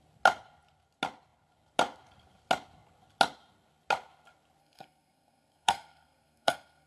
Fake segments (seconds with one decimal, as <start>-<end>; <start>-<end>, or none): 4.6-6.9